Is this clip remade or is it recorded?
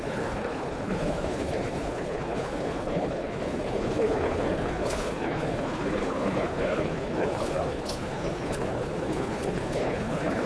remade